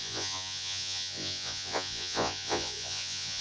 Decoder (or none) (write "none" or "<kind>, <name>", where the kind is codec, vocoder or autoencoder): vocoder, Vocos